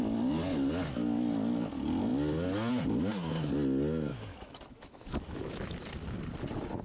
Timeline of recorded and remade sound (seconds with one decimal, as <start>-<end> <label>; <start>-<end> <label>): 0.0-4.1 recorded; 4.1-5.9 remade; 5.9-6.8 recorded